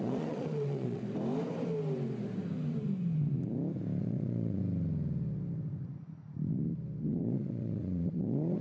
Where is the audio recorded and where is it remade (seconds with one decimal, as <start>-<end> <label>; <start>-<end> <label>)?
0.0-1.0 remade; 1.0-4.0 recorded; 4.0-4.6 remade; 4.6-7.0 recorded; 7.0-8.6 remade